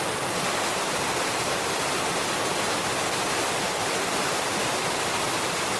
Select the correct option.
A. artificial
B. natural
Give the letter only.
B